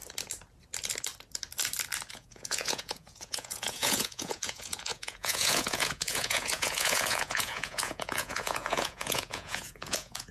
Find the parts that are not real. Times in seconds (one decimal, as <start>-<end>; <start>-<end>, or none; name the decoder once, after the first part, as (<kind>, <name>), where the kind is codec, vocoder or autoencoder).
2.1-10.3 (vocoder, Vocos)

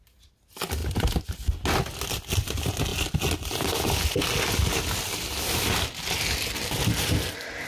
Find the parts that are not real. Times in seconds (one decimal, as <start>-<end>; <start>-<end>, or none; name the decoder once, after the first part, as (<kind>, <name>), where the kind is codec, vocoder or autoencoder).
none

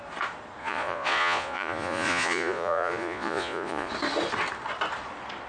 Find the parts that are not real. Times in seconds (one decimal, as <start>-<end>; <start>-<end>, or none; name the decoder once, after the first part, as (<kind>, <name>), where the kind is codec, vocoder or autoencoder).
0.6-3.9 (vocoder, Vocos)

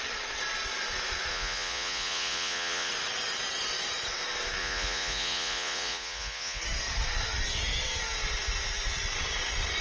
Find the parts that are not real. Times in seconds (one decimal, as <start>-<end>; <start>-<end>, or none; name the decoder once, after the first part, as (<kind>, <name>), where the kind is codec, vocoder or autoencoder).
1.3-2.9 (vocoder, Vocos); 4.6-6.6